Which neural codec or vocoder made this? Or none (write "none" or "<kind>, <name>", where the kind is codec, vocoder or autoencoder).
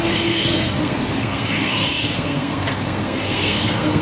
codec, SNAC